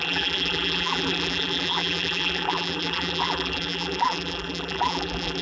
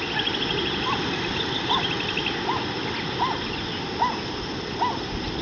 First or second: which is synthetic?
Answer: first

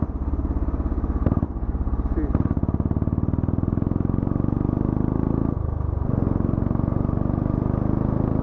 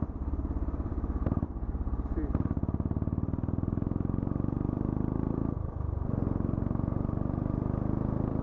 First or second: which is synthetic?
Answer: second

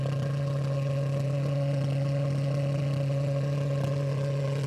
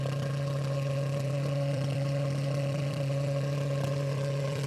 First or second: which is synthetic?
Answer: second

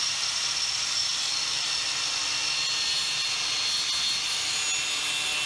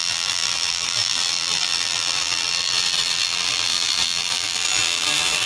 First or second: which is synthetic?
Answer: second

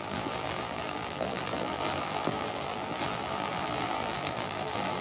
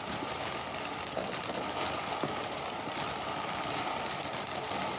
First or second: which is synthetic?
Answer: first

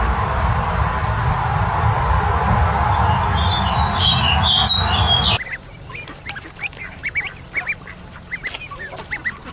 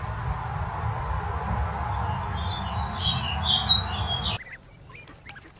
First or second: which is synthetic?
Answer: first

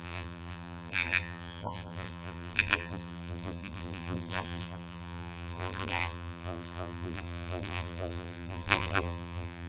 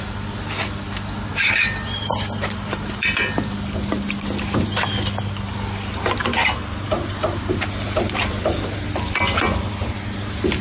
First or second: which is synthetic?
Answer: first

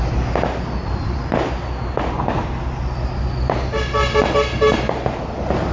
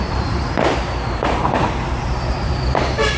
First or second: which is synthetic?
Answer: second